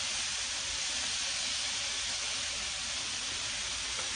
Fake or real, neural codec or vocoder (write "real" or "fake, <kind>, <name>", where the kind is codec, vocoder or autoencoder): real